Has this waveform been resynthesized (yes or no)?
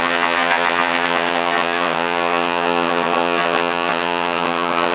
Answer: yes